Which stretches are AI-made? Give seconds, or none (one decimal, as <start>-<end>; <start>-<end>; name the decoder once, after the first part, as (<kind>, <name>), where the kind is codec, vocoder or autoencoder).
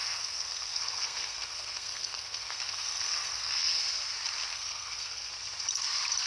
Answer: 0.0-3.8 (codec, SNAC); 4.5-5.3